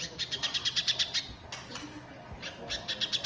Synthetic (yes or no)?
no